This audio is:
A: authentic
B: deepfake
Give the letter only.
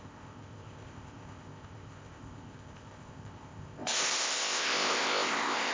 B